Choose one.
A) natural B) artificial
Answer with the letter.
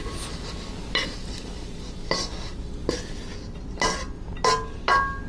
A